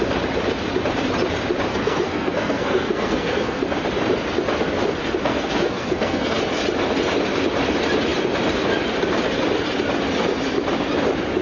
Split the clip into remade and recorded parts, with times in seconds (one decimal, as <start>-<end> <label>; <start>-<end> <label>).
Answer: 0.0-1.7 recorded; 1.7-3.6 remade; 3.6-5.2 recorded; 5.2-6.4 remade; 6.4-11.4 recorded